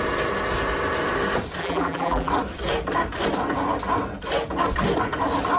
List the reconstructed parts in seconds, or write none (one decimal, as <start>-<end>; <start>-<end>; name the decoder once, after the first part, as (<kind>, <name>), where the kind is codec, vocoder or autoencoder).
1.6-2.3 (vocoder, BigVGAN v2)